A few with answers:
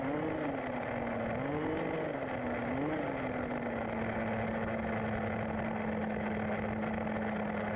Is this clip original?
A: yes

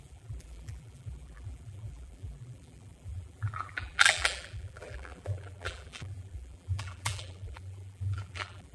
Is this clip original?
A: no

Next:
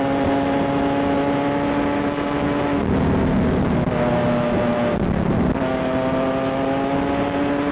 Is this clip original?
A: yes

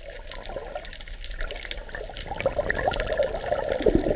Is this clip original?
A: yes